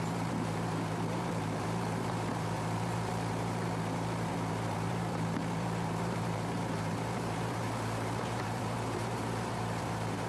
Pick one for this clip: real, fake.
fake